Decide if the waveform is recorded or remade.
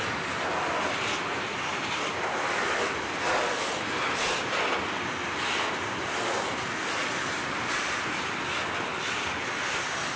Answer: recorded